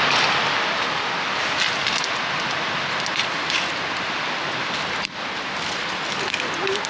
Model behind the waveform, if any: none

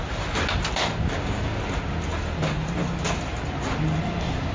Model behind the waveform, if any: none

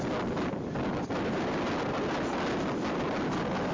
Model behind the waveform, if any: none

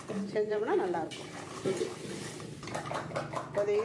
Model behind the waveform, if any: vocoder, BigVGAN v2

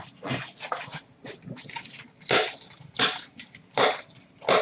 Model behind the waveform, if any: none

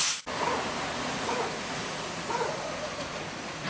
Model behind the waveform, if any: vocoder, Vocos